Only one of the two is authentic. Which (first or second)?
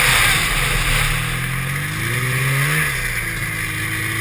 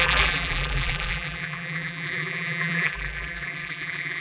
first